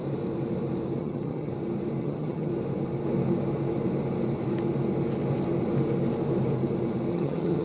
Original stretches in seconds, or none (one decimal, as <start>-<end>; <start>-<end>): 0.0-1.0; 1.5-2.0; 2.5-7.1